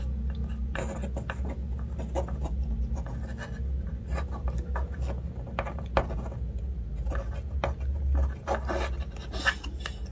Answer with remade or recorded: recorded